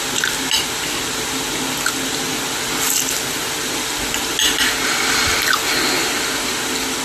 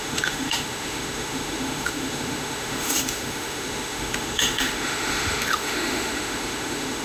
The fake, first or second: second